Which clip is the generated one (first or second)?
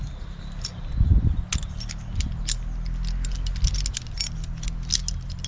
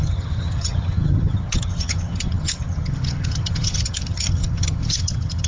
second